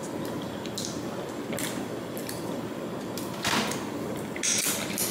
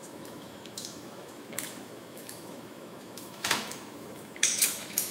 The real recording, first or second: first